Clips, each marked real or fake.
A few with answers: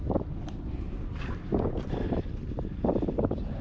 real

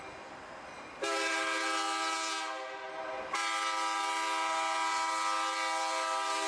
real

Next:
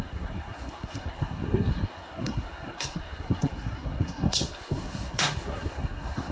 fake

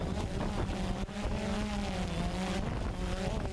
real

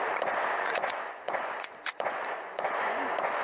fake